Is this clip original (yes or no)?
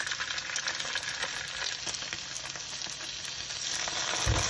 yes